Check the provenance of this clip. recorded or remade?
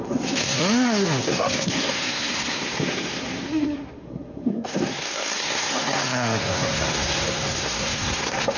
remade